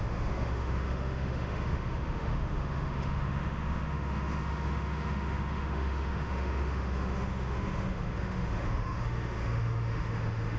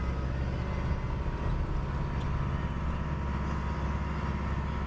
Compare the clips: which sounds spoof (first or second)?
first